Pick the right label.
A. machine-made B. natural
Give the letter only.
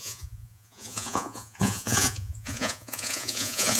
A